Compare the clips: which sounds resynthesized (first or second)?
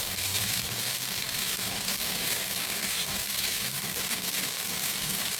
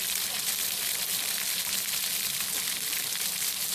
first